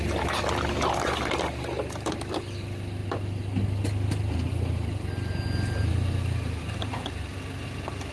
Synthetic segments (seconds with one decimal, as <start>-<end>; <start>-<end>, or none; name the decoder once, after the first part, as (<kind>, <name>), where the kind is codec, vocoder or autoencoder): none